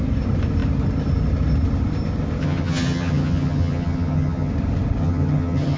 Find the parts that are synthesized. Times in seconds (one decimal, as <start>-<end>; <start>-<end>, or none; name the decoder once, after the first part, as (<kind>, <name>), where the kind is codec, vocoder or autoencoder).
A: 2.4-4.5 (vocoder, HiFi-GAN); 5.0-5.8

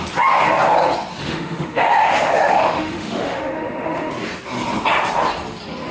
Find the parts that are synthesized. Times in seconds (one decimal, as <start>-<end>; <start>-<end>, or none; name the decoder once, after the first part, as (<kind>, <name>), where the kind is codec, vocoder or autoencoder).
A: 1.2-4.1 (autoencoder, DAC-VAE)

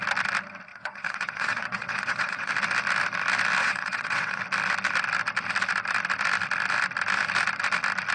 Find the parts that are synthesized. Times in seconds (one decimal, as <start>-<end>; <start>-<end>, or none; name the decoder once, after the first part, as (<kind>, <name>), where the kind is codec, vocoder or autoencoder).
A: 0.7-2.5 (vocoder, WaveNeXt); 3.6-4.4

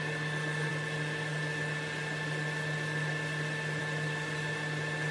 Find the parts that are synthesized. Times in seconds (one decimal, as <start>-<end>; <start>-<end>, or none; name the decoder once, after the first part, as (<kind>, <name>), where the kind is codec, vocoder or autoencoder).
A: none